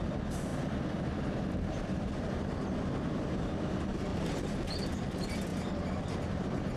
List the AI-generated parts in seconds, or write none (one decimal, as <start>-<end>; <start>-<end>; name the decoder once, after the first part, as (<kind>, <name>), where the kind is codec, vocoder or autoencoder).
0.5-2.9 (vocoder, BigVGAN v2); 4.1-4.8; 5.5-6.8